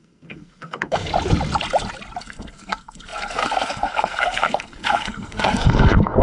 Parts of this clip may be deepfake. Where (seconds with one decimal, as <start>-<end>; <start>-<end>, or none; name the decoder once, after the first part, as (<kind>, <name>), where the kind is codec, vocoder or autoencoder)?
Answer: 0.0-1.1 (codec, SNAC); 2.2-6.2

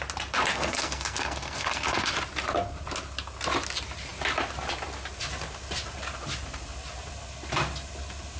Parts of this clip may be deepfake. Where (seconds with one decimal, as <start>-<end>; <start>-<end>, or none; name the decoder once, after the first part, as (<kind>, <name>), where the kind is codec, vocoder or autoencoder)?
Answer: 0.5-2.1 (codec, SNAC)

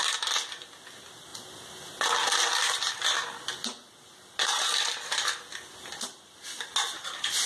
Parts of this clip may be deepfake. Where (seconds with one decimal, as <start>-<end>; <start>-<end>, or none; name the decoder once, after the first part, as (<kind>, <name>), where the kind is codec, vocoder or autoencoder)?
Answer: none

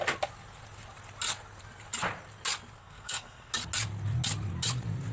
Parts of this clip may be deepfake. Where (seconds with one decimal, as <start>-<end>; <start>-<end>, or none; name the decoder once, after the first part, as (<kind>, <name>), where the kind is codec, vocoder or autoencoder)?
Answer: 2.8-3.5 (codec, SNAC)

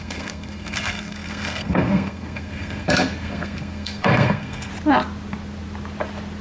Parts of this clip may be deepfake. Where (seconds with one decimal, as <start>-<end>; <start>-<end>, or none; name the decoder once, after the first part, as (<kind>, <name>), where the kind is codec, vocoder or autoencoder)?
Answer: 0.0-4.7 (codec, SNAC)

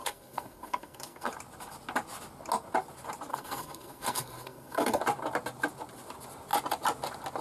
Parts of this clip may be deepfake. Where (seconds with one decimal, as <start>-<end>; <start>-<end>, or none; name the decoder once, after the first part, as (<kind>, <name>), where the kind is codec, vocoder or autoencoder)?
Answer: 0.0-1.3 (codec, SNAC); 3.3-5.0